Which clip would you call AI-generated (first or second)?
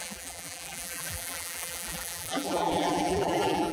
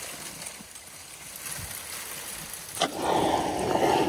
first